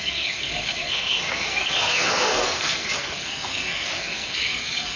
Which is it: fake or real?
fake